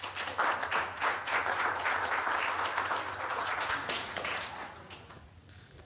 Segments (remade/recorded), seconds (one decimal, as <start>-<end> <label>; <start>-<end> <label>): 0.0-0.7 recorded; 0.7-2.1 remade; 2.1-3.3 recorded; 3.3-5.8 remade